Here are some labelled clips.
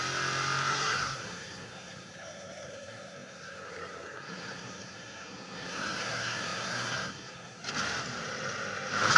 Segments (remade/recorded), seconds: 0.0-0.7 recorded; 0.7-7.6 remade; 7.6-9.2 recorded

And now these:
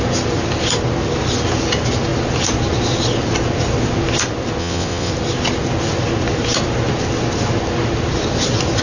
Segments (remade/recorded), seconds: 0.0-4.6 recorded; 4.6-5.1 remade; 5.1-8.8 recorded

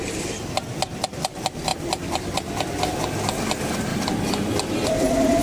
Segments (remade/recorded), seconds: 0.0-3.9 recorded; 3.9-5.4 remade

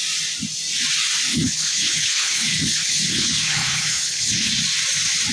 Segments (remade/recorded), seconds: 0.0-1.3 recorded; 1.3-4.5 remade; 4.5-5.3 recorded

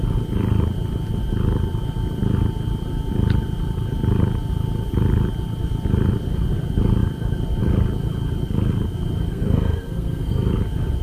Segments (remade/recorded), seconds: 0.0-9.3 recorded; 9.3-10.5 remade; 10.5-11.0 recorded

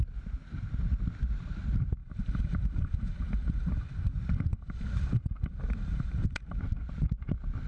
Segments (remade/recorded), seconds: 0.0-2.0 recorded; 2.0-6.6 remade; 6.6-7.7 recorded

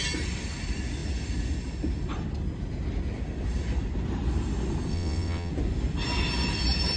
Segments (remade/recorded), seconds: 0.0-4.9 recorded; 4.9-5.5 remade; 5.5-7.0 recorded